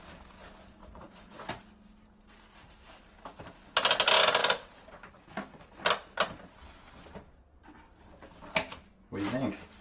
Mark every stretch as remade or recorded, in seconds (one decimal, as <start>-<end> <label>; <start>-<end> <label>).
0.0-0.8 recorded; 0.8-1.6 remade; 1.6-9.8 recorded